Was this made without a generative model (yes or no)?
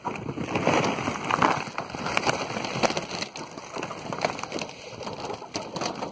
yes